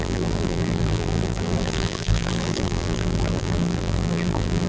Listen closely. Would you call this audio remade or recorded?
remade